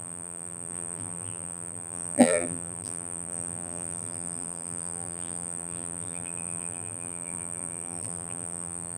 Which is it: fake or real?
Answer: fake